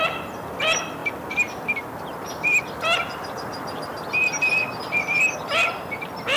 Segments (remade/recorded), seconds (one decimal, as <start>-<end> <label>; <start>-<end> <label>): 0.0-6.4 recorded